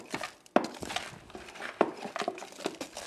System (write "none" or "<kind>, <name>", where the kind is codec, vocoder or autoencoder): none